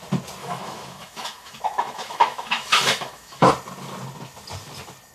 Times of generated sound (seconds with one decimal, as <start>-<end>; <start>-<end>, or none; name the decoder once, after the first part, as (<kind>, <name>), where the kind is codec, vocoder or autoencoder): 0.4-3.5 (autoencoder, DAC-VAE)